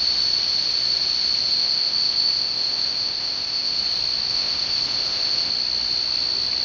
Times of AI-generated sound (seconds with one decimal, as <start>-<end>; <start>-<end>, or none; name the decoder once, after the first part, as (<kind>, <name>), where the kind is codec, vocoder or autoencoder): 1.5-3.8 (codec, ZipCodec); 4.3-5.5